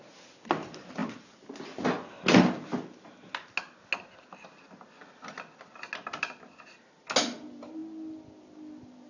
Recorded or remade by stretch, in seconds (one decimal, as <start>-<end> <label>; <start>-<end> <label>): 0.0-9.1 recorded